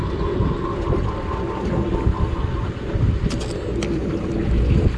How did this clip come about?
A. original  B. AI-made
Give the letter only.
A